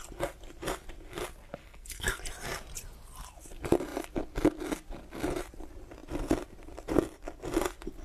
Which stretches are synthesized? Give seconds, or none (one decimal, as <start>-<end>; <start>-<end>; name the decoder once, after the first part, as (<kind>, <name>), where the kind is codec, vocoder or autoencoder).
1.6-2.2 (codec, SNAC)